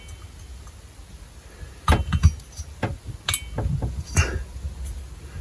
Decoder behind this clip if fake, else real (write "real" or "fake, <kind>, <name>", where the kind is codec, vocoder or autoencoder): real